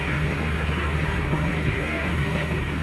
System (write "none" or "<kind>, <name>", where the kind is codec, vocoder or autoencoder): codec, SNAC